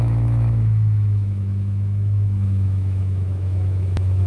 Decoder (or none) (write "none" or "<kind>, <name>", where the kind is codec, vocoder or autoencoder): autoencoder, DAC-VAE